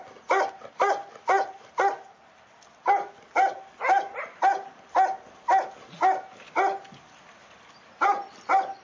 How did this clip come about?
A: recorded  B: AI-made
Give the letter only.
A